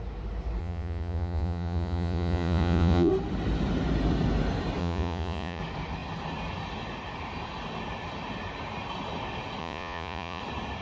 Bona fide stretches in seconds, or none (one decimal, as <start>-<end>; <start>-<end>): 0.0-0.6; 3.1-4.8; 5.6-9.6; 10.4-10.8